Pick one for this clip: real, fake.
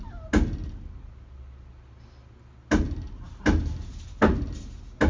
real